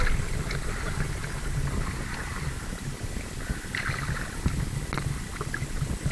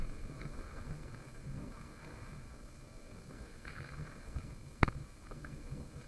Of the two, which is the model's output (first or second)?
second